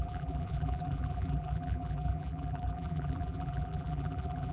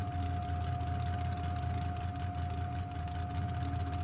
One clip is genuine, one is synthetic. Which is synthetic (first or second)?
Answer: first